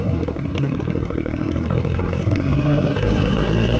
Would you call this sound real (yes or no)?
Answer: no